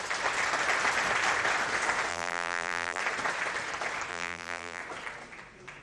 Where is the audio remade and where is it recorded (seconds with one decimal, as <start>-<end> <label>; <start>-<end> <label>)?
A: 0.0-2.1 recorded; 2.1-3.0 remade; 3.0-4.1 recorded; 4.1-4.8 remade; 4.8-5.8 recorded